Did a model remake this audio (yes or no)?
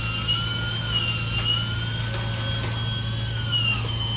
no